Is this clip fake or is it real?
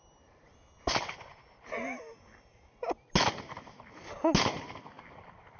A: real